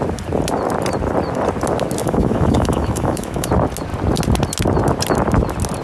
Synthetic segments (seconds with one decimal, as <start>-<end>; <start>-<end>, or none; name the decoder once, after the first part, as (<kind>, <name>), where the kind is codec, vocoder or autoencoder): 2.0-3.5 (autoencoder, DAC-VAE)